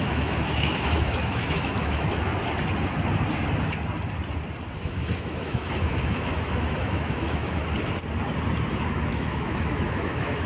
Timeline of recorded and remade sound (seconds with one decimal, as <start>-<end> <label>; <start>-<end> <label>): 0.0-2.3 remade; 2.3-4.9 recorded; 4.9-7.6 remade; 7.6-8.7 recorded; 8.7-10.5 remade